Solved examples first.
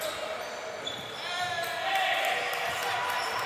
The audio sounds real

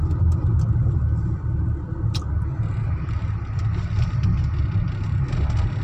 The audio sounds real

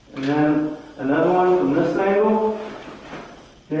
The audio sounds real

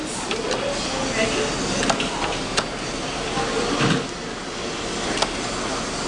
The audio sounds real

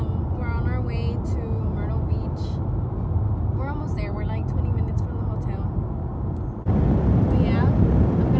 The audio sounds real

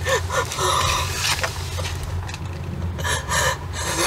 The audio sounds real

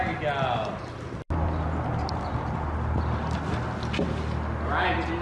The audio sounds real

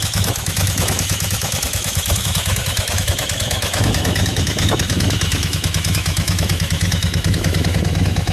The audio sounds fake